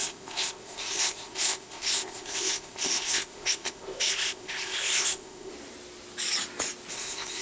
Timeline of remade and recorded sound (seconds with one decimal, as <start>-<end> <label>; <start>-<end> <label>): 0.0-5.5 remade; 5.5-6.9 recorded; 6.9-7.4 remade